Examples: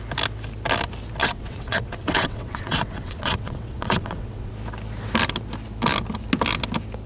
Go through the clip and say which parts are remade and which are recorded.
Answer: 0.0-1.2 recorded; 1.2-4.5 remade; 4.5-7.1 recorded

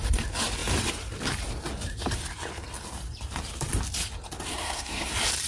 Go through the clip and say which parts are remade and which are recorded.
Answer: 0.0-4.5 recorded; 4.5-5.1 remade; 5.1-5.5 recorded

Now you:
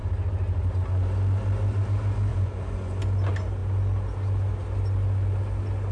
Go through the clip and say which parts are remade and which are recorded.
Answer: 0.0-2.3 recorded; 2.3-3.0 remade; 3.0-5.9 recorded